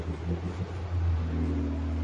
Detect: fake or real real